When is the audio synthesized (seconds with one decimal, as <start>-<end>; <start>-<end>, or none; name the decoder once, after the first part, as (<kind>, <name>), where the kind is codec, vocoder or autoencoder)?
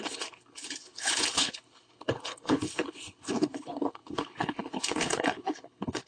0.0-6.1 (codec, HILCodec)